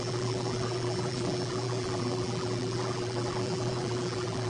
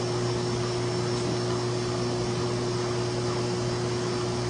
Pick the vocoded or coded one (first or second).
first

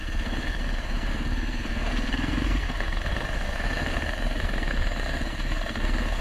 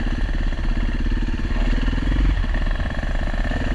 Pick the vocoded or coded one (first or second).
first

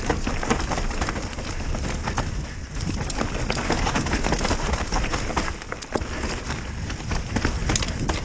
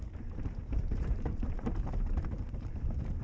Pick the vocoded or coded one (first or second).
second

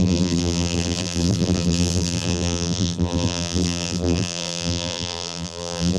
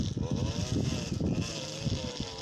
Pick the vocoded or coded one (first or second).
first